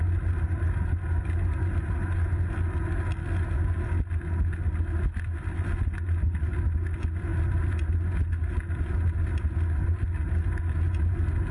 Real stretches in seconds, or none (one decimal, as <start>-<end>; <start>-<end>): 0.0-11.5